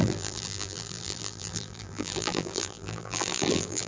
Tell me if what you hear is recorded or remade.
remade